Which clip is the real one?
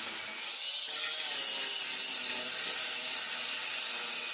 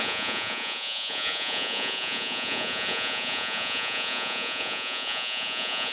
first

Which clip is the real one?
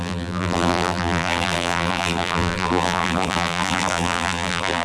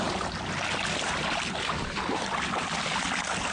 second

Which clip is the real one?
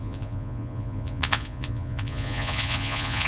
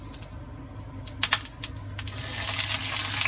second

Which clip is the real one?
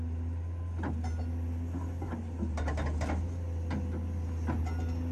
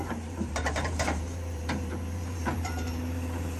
first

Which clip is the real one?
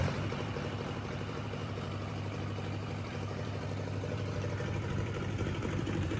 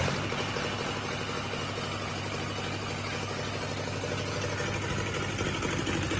second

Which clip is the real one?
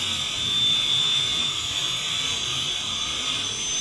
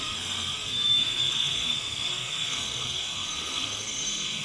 first